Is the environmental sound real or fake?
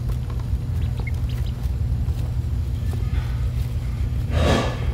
real